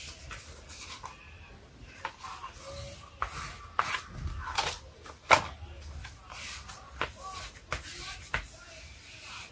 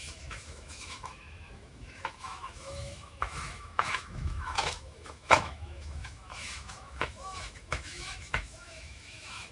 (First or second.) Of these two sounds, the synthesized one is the second